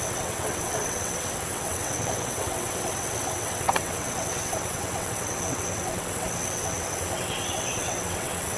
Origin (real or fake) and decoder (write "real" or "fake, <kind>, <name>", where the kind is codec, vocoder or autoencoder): fake, vocoder, WaveNeXt